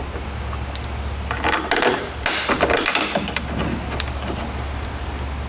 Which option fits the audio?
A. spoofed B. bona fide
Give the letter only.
B